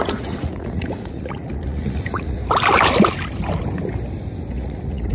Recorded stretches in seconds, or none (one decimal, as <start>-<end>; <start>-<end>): 2.4-4.5